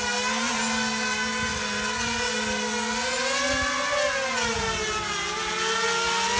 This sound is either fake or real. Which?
real